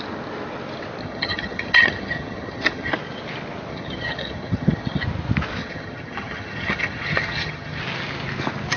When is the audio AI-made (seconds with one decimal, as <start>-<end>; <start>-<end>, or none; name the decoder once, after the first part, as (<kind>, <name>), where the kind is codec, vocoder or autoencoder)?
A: 1.0-2.9 (vocoder, HiFi-GAN); 3.7-5.0; 5.6-7.8